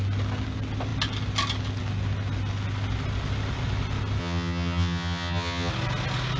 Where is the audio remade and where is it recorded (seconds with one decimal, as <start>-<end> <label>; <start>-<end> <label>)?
0.0-4.2 recorded; 4.2-5.7 remade; 5.7-6.4 recorded